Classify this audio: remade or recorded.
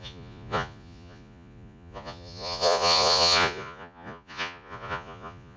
remade